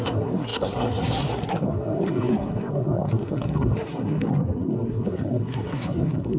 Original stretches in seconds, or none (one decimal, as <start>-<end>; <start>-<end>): none